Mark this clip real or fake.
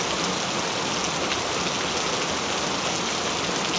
real